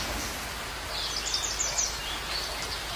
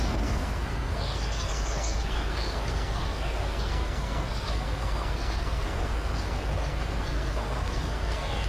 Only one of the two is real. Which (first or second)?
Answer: first